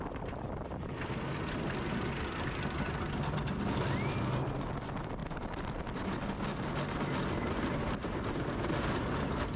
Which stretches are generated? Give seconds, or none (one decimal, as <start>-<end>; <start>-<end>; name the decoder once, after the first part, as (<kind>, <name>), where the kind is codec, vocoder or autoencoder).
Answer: 5.2-5.8 (vocoder, BigVGAN v2)